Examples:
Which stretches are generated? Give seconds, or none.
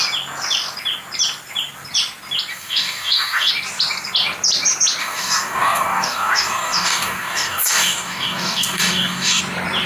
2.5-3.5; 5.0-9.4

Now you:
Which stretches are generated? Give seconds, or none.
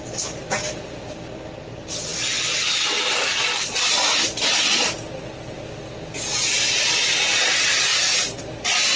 none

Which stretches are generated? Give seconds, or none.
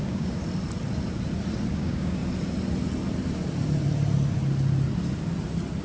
0.0-0.4; 1.7-2.2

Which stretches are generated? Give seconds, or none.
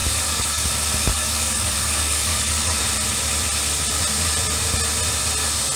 0.0-0.7; 1.1-2.8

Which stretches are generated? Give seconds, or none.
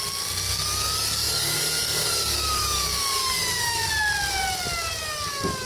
0.5-3.9; 5.0-5.7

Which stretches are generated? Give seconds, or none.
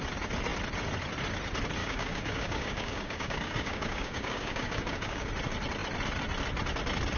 1.8-5.3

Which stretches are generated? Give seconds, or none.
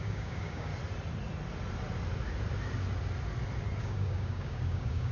0.0-0.7; 3.8-5.1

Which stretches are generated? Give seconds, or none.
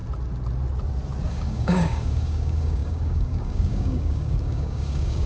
1.3-5.3